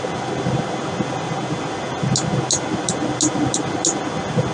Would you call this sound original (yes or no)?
yes